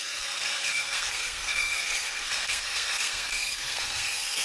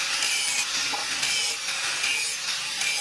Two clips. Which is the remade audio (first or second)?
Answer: first